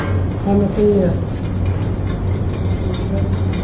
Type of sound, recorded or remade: recorded